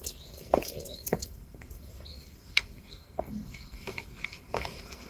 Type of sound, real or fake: fake